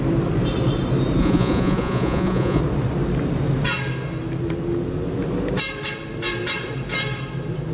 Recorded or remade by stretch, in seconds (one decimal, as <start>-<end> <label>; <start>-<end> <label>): 0.0-1.2 recorded; 1.2-2.6 remade; 2.6-7.7 recorded